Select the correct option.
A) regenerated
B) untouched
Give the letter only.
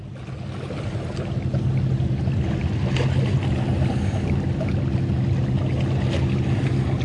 B